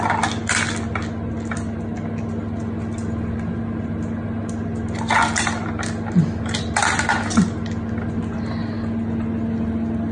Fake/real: real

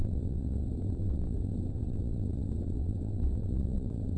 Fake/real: fake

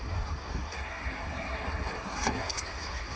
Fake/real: fake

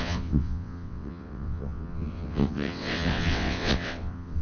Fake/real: fake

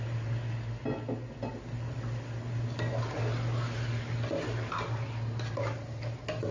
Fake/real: real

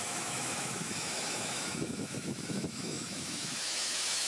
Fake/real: fake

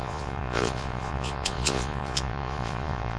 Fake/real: fake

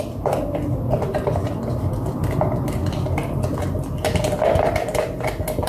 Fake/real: real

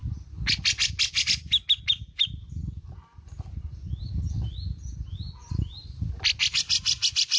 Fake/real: real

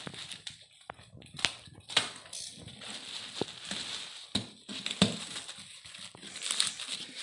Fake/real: real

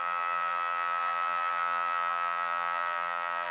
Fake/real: fake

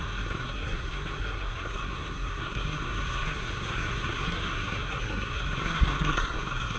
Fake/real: fake